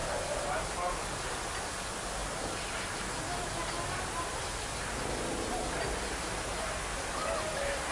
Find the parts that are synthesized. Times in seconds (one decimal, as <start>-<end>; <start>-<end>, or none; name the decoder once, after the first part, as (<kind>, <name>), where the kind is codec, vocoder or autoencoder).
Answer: none